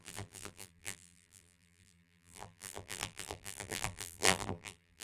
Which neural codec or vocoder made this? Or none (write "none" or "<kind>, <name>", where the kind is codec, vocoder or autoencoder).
vocoder, BigVGAN v2